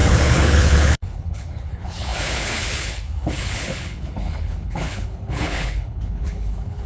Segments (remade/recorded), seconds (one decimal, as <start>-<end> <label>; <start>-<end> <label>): 0.0-6.9 remade